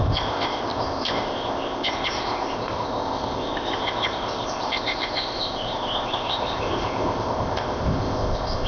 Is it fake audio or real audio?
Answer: fake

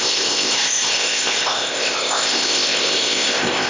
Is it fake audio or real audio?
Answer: fake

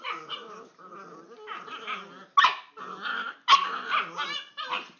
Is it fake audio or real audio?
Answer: real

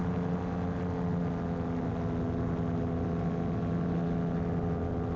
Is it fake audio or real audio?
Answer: real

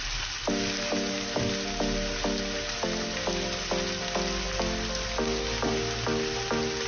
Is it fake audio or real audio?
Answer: real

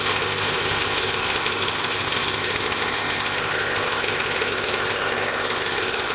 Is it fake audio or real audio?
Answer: fake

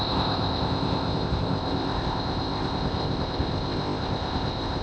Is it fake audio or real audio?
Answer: fake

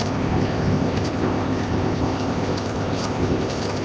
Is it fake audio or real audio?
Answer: fake